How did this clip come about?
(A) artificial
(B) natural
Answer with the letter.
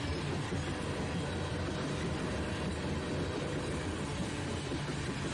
B